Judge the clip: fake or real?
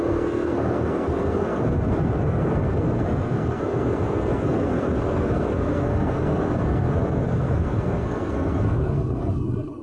fake